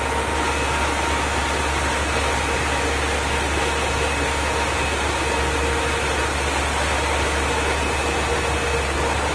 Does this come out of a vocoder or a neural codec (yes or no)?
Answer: no